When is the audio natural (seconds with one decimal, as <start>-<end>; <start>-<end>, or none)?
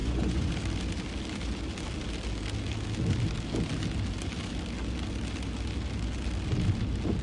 0.5-7.2